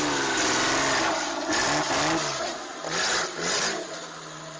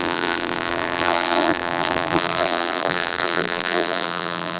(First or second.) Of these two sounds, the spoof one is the second